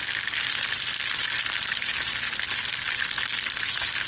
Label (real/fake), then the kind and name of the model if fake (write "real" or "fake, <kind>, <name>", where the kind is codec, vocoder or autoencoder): real